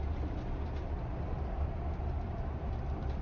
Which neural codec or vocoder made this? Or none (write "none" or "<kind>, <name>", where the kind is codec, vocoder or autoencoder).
none